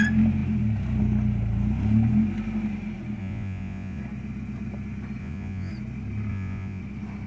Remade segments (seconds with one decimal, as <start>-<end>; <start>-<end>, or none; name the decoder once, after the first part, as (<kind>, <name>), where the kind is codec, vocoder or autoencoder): 3.2-4.0 (vocoder, Vocos); 5.2-5.7; 6.3-6.8